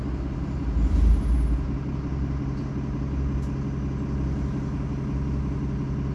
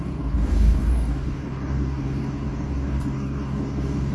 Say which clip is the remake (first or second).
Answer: second